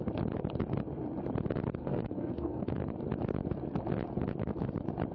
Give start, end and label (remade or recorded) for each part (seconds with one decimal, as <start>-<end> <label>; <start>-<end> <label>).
0.0-1.8 recorded; 1.8-2.8 remade; 2.8-5.1 recorded